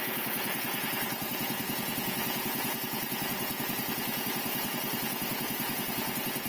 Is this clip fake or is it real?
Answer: fake